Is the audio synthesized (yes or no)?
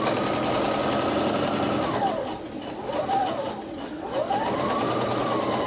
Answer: no